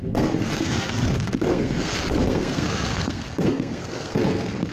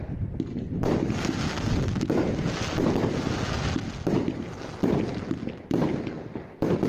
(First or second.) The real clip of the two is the second